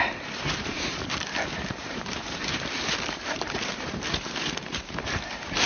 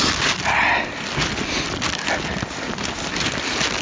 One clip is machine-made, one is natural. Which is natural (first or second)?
second